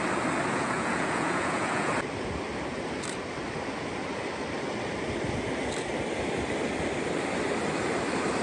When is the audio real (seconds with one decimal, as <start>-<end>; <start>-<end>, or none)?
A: 0.0-0.5; 1.9-8.4